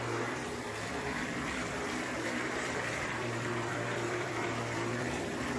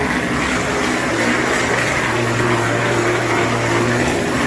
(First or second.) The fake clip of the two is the first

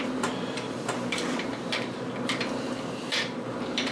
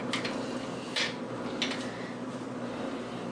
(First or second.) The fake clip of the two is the first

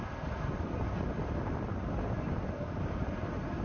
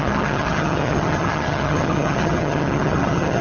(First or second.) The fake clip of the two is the second